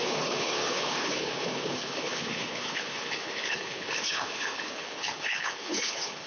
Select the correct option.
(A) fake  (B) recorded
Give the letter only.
A